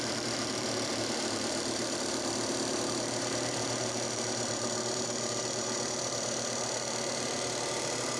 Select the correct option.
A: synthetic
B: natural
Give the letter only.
A